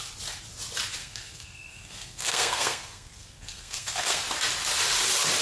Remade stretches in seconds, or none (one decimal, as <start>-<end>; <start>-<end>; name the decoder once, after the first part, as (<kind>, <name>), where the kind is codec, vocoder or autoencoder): 1.0-4.2 (codec, SNAC)

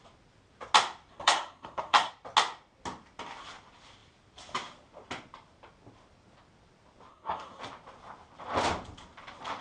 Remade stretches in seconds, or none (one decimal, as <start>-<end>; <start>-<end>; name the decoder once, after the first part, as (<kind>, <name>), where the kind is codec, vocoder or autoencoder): 1.1-2.1 (codec, SNAC); 7.1-7.6

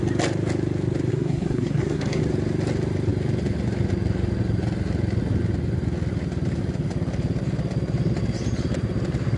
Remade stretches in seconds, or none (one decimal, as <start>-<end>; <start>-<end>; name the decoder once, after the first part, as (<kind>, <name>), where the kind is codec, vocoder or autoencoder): 1.1-2.2 (codec, SNAC)

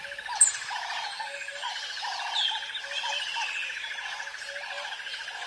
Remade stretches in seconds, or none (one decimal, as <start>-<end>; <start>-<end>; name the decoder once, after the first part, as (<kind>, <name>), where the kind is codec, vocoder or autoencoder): 1.1-1.7 (codec, SNAC)

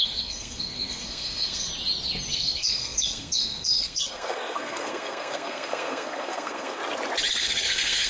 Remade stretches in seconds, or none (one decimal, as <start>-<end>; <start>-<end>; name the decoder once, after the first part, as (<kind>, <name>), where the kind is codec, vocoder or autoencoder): 0.0-1.7 (codec, SNAC); 2.3-6.8; 7.3-8.1

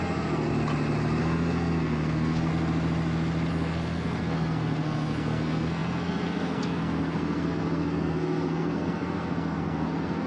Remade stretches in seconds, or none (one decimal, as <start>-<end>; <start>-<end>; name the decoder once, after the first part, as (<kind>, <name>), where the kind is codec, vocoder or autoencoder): 0.0-0.5 (codec, SNAC); 1.2-2.5; 3.5-10.3

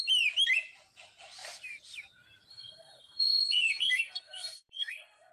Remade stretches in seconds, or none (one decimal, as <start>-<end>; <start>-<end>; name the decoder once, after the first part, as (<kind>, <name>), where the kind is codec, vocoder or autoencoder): 2.5-5.3 (codec, SNAC)